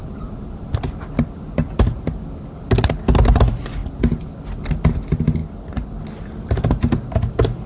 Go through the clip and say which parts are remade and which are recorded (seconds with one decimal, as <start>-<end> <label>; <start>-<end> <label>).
0.0-7.7 recorded